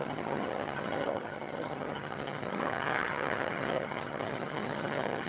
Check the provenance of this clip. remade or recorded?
remade